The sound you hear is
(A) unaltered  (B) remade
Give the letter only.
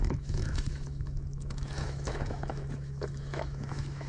B